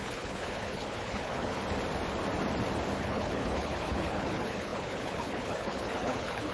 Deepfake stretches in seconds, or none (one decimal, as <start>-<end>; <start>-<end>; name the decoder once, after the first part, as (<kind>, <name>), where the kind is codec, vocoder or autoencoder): 0.0-1.6 (codec, HILCodec); 3.0-6.5